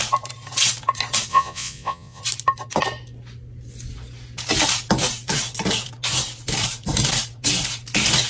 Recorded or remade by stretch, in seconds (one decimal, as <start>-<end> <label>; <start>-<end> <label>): 0.0-1.3 recorded; 1.3-2.2 remade; 2.2-8.3 recorded